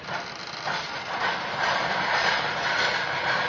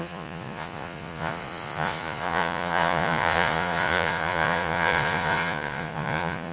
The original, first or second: first